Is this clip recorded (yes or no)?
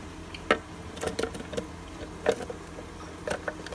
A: yes